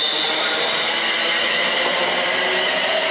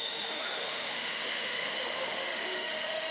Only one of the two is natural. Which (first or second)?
first